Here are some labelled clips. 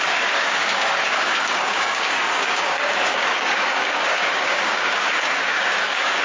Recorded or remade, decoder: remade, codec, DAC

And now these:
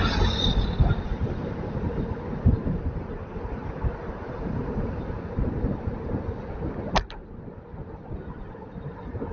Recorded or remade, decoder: recorded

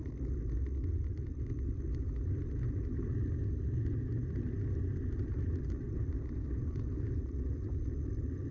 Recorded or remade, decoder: recorded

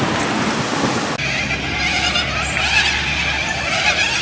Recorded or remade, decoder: recorded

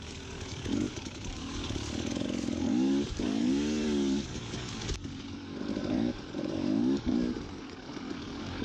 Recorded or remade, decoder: remade, codec, DAC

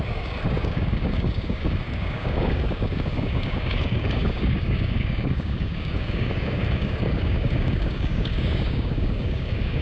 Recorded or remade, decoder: remade, codec, DAC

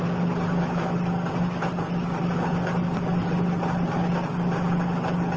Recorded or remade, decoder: recorded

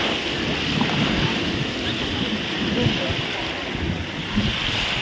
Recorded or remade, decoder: recorded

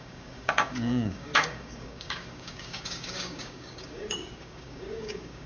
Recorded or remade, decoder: remade, codec, DAC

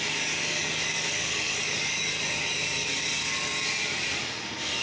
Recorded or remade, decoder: remade, codec, DAC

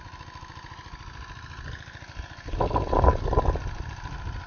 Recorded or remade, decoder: recorded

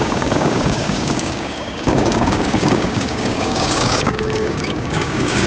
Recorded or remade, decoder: remade, codec, DAC